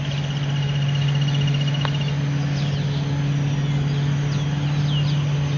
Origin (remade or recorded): recorded